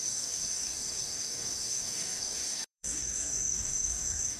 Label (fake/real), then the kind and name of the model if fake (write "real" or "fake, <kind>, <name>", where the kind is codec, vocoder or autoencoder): fake, codec, DAC